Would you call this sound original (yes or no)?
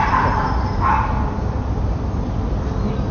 yes